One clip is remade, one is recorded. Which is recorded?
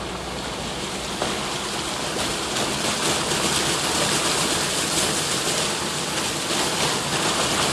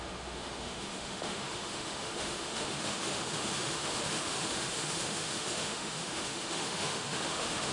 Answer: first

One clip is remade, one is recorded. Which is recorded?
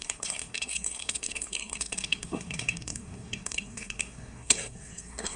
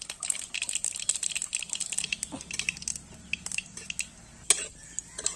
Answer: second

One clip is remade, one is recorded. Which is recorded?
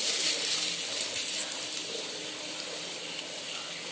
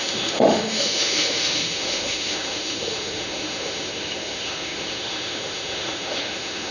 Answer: first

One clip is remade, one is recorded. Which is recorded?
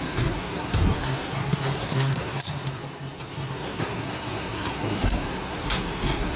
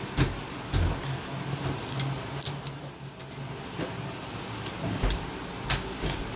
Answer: second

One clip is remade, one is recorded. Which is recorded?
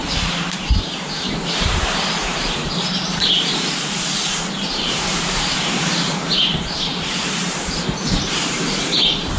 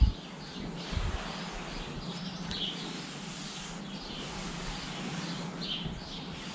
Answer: second